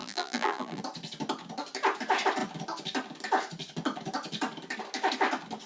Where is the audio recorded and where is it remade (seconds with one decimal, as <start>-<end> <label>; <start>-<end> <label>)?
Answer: 0.0-0.8 remade; 0.8-5.7 recorded